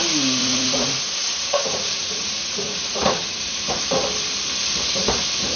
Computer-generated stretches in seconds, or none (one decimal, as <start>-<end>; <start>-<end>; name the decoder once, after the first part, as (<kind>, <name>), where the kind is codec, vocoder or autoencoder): 0.4-3.8 (vocoder, Vocos)